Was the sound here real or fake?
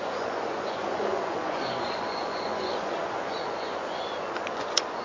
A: fake